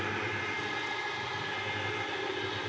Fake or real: real